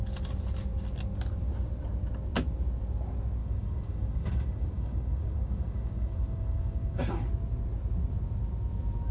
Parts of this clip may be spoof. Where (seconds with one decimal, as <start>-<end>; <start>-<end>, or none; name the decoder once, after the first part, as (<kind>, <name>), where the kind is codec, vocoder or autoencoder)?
3.4-7.3 (codec, DAC)